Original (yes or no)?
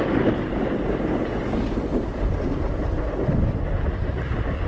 yes